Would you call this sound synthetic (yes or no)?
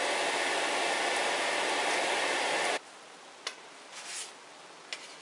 no